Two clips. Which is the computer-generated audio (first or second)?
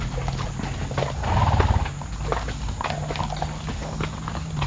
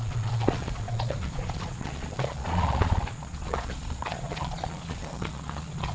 second